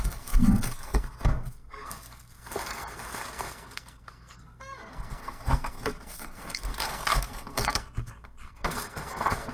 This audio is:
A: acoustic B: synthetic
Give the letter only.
B